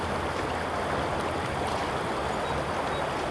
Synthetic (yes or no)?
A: no